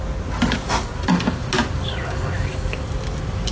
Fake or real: real